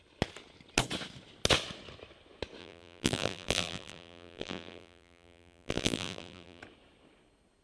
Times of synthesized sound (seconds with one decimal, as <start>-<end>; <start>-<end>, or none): 2.6-6.6